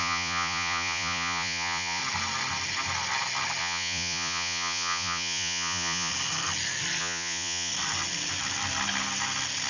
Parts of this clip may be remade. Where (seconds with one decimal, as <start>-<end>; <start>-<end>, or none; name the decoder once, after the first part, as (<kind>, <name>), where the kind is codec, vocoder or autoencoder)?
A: 0.0-2.0 (vocoder, Vocos); 3.6-6.1; 7.0-7.7